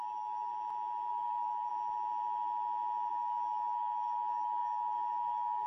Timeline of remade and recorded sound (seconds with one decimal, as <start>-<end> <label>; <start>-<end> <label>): 0.0-0.5 remade; 0.5-1.1 recorded; 1.1-1.7 remade; 1.7-3.1 recorded; 3.1-5.7 remade